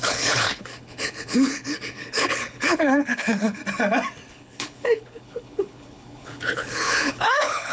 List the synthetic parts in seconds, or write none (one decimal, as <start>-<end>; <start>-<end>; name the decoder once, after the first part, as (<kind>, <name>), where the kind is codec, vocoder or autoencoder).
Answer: 0.0-3.6 (codec, HILCodec); 4.3-7.7

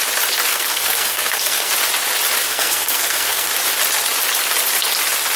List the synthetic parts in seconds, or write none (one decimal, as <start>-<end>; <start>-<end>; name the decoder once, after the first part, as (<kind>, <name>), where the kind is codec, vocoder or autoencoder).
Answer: 0.5-1.7 (codec, SNAC); 2.4-3.5